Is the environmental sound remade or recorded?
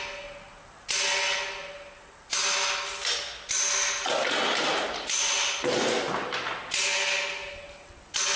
recorded